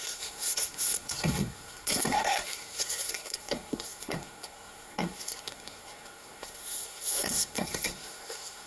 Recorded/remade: remade